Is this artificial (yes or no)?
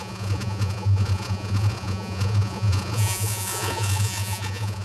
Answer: yes